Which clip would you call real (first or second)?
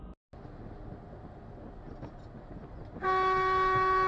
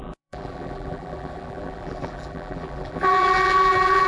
first